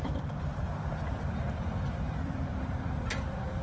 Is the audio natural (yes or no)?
no